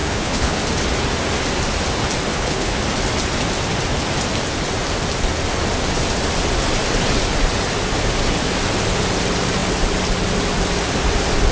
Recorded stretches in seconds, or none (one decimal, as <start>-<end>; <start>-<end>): 0.6-2.3; 2.8-11.5